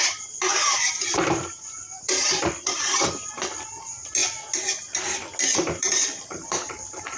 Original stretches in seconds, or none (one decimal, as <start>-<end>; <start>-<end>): 4.2-5.7